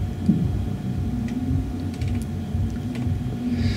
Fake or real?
real